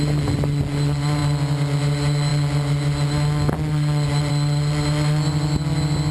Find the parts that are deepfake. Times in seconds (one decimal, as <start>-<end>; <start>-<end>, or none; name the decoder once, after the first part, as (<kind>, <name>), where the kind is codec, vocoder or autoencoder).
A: none